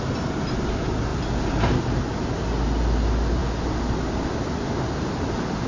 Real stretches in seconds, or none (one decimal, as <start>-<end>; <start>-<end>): 0.0-5.7